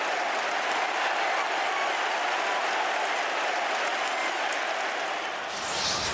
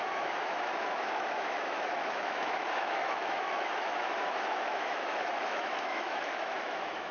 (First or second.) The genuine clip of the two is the first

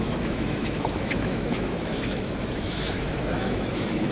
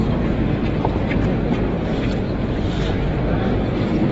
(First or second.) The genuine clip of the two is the second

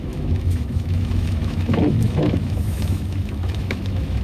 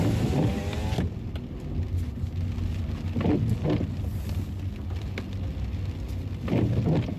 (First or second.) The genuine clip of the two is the second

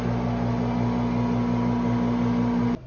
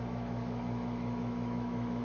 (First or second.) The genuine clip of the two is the first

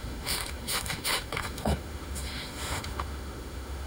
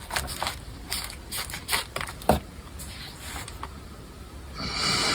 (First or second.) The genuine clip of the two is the second